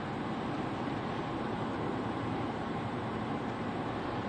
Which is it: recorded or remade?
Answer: remade